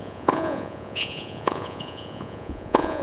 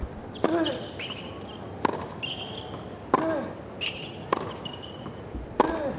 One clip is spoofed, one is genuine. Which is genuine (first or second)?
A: second